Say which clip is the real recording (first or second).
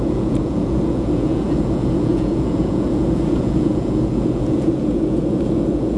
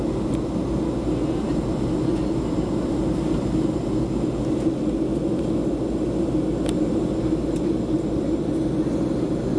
second